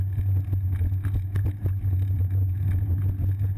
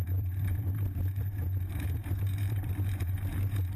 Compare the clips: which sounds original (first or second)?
first